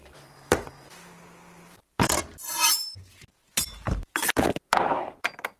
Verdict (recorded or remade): remade